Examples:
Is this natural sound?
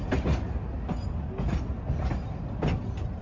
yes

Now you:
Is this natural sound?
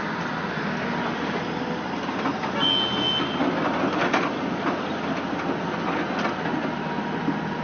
yes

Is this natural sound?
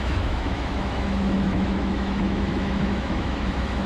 no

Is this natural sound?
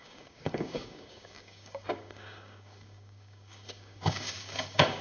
no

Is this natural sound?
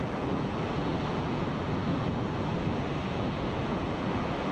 no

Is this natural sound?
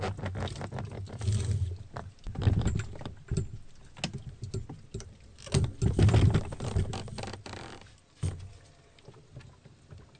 yes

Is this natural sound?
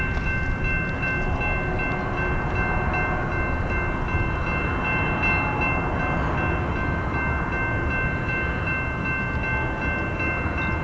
yes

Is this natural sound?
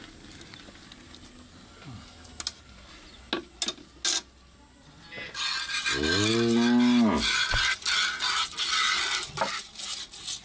yes